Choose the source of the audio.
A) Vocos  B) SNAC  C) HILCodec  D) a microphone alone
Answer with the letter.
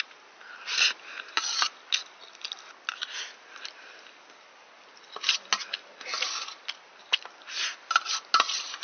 D